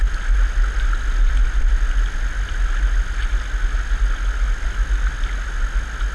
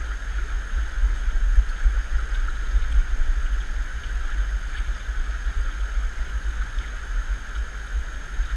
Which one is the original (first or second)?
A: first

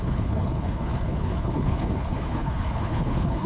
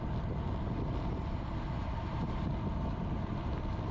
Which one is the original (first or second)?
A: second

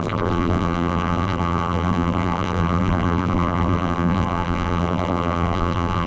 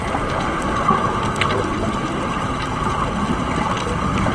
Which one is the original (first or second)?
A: second